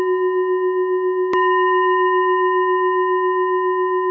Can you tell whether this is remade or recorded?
recorded